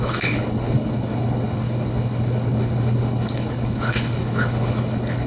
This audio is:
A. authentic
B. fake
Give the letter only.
B